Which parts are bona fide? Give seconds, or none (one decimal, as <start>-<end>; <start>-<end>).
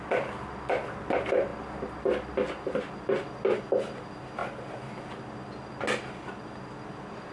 0.0-7.3